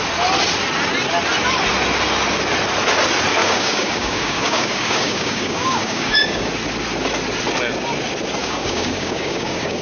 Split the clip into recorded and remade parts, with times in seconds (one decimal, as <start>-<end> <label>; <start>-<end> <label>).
0.0-3.4 recorded; 3.4-6.5 remade; 6.5-8.4 recorded; 8.4-9.8 remade